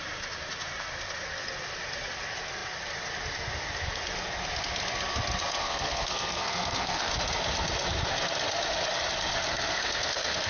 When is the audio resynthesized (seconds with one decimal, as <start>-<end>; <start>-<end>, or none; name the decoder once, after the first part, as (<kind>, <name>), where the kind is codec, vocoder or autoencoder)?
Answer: 5.6-7.1 (codec, SNAC); 9.5-10.5